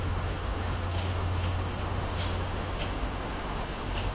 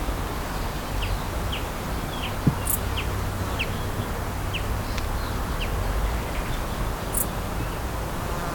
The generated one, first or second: first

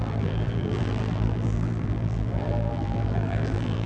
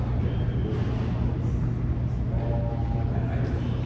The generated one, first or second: first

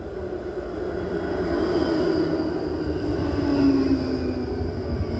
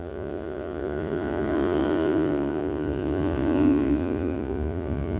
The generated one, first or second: second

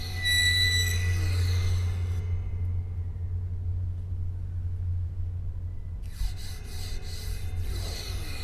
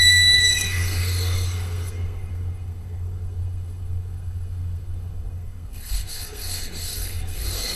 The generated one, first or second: second